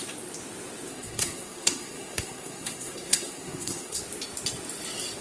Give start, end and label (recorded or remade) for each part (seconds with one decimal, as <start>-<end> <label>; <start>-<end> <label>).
0.0-0.9 recorded; 0.9-4.0 remade; 4.0-5.2 recorded